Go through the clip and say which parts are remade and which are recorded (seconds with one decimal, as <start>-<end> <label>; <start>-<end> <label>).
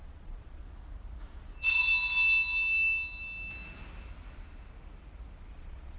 0.0-0.6 remade; 0.6-1.4 recorded; 1.4-1.9 remade; 1.9-5.5 recorded; 5.5-6.0 remade